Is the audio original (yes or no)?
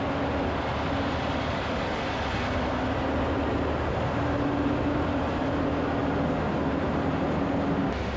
yes